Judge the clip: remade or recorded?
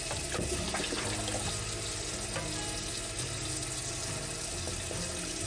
recorded